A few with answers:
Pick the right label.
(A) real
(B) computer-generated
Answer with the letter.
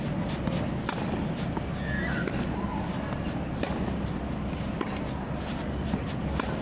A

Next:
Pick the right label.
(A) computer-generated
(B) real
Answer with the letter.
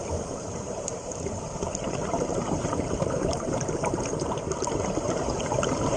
A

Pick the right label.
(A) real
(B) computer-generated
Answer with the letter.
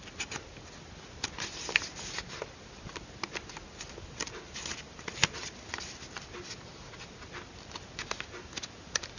A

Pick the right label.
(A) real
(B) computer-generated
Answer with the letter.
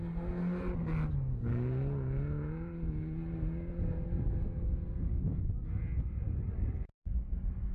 A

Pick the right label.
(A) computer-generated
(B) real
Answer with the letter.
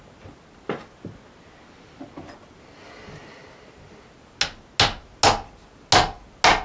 B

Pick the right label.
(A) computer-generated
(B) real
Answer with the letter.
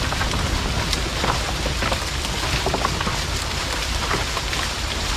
A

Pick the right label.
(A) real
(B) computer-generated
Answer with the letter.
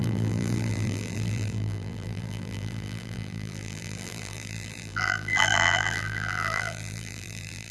B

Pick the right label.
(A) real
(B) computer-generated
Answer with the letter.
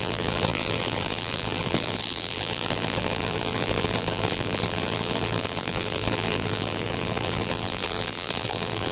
B